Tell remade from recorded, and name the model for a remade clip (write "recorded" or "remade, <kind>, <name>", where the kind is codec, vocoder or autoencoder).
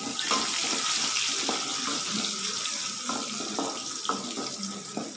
recorded